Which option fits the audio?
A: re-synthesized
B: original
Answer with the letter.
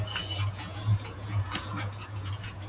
A